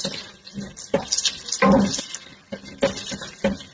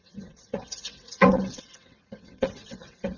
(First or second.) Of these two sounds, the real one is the first